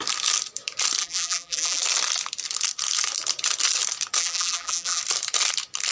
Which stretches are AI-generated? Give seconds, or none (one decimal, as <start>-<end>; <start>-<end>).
1.0-1.8; 4.2-5.0